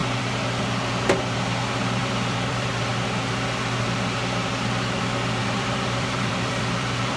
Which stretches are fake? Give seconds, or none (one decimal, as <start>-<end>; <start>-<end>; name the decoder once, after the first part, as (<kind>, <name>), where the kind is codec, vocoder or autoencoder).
0.0-0.6 (vocoder, BigVGAN v2); 2.0-2.8; 5.4-7.2